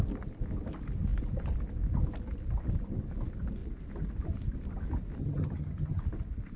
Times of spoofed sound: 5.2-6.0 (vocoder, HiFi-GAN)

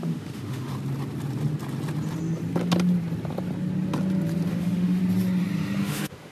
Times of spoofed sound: 0.0-0.7 (autoencoder, DAC-VAE); 4.5-5.0; 5.8-6.3

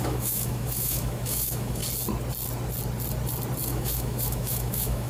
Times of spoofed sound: 0.0-1.8 (autoencoder, DAC-VAE); 3.7-5.1